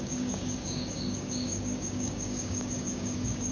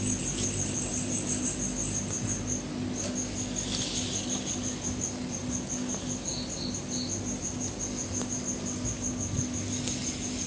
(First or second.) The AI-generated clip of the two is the first